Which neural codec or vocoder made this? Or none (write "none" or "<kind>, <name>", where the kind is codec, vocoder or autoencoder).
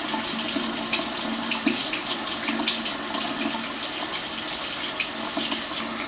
none